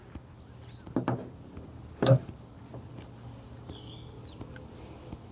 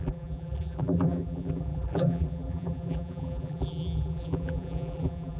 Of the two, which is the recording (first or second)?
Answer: first